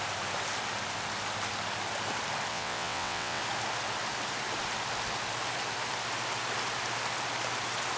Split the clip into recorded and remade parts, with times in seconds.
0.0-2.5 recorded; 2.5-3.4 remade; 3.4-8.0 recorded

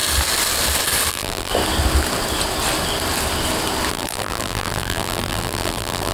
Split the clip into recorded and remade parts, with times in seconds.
0.0-1.1 recorded; 1.1-1.5 remade; 1.5-3.9 recorded; 3.9-6.1 remade

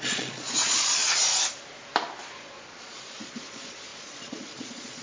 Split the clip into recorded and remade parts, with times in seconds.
0.0-1.0 remade; 1.0-2.2 recorded; 2.2-5.0 remade